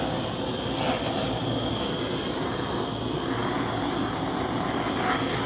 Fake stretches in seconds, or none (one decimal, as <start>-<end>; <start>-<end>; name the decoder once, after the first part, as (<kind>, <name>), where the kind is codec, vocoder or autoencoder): none